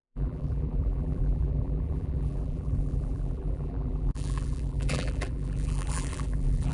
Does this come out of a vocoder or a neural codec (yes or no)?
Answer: yes